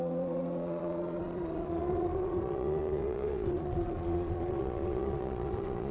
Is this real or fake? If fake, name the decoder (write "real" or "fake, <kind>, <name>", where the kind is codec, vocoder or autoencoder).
fake, vocoder, Vocos